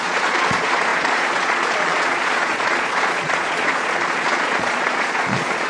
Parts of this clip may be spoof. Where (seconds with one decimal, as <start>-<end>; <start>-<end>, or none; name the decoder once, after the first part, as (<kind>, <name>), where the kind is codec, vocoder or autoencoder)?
0.0-5.7 (vocoder, Vocos)